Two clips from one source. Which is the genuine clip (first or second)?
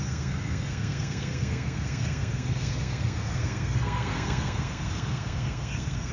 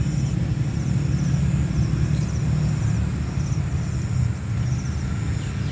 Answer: second